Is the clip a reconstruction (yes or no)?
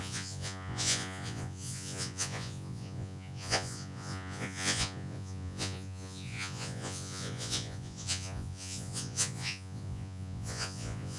yes